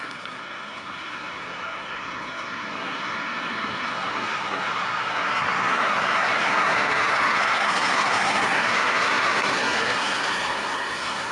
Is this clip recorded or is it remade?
remade